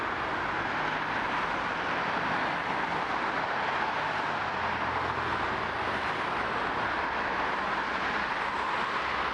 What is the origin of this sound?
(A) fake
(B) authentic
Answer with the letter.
B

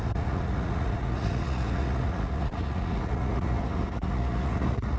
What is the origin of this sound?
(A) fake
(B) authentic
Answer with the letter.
A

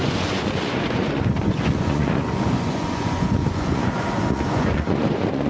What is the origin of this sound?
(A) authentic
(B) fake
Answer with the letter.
B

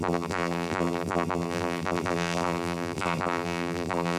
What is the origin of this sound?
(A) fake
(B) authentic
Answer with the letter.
A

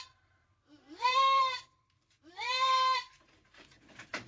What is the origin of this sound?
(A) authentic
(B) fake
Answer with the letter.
B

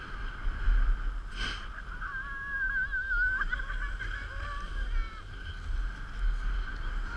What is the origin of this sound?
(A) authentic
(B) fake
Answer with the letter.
A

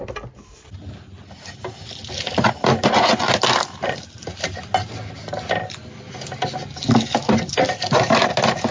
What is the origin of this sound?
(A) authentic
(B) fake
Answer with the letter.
A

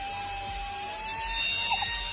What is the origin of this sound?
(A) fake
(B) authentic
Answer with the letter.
B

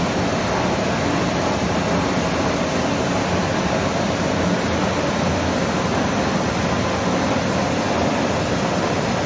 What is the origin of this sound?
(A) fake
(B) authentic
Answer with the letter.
B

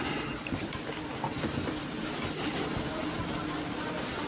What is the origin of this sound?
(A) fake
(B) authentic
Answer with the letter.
B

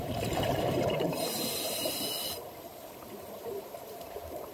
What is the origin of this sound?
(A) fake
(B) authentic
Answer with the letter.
A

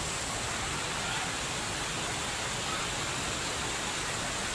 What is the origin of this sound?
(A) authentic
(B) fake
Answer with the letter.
A